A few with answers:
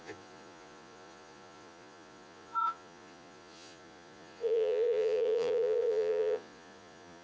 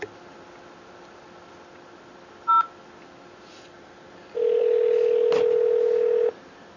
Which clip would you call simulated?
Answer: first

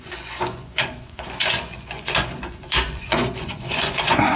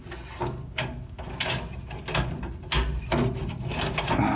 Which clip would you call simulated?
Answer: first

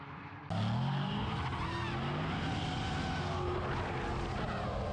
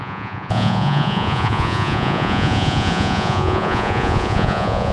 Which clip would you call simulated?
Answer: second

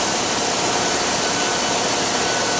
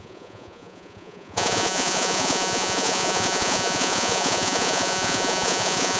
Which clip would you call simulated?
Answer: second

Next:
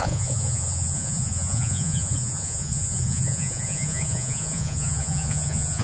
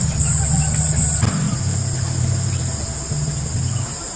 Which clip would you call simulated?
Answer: first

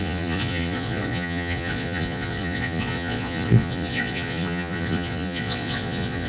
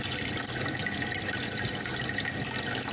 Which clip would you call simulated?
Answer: first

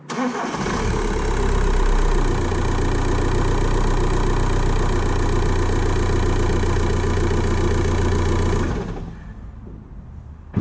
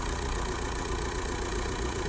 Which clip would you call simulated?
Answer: second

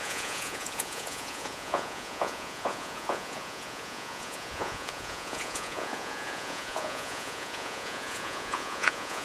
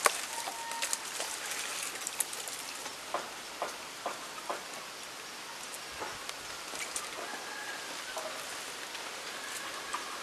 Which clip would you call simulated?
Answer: first